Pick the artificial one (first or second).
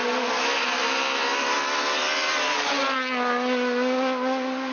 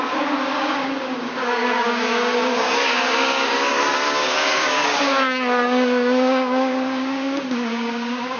second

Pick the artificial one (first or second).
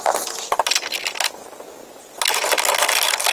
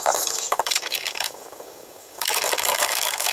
second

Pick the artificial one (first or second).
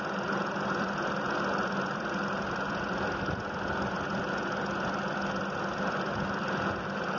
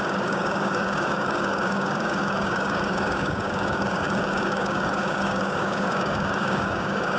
second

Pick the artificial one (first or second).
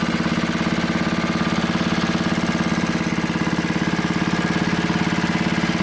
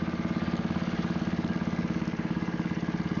second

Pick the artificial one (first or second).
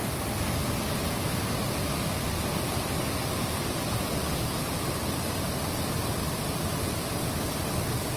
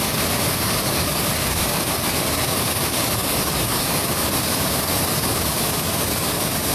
second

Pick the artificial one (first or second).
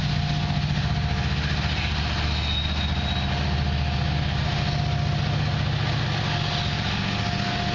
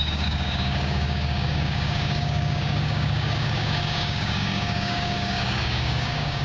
second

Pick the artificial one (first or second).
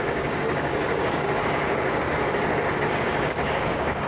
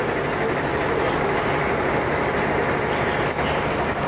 first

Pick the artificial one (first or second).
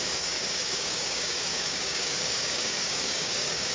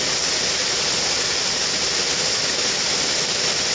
first